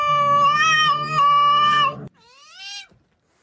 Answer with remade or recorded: recorded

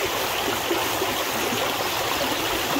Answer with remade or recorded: recorded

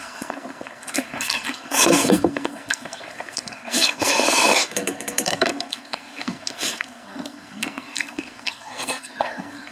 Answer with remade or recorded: remade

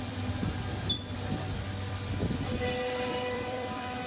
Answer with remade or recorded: remade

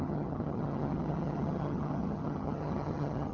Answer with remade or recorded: remade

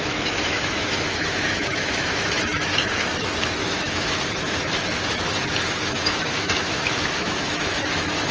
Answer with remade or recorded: remade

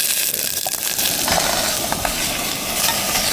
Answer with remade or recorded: remade